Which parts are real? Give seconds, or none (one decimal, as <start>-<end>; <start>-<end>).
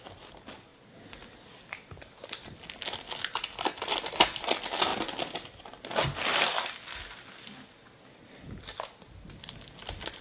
0.0-10.2